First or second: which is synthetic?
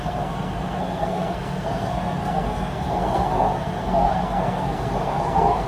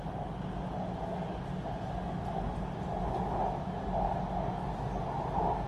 first